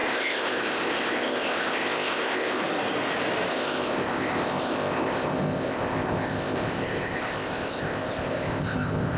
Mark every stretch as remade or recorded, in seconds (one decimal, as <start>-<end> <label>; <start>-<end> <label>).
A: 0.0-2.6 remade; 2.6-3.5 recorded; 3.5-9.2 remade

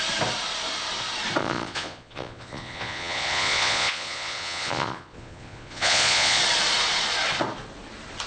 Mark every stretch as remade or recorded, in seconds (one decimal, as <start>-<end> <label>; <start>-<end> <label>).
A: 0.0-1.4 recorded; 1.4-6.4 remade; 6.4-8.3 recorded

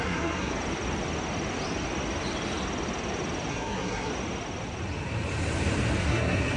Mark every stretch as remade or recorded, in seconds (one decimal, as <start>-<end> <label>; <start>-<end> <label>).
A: 0.0-0.5 remade; 0.5-3.5 recorded; 3.5-4.1 remade; 4.1-6.0 recorded; 6.0-6.6 remade